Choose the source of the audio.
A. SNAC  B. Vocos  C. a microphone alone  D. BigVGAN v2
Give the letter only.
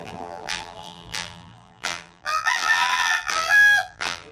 D